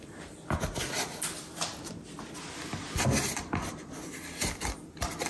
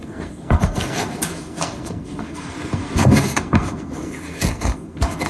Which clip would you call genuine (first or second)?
first